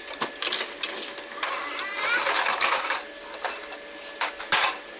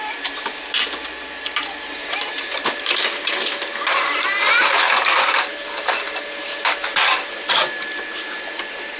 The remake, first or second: second